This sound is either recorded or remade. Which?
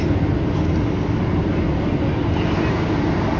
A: recorded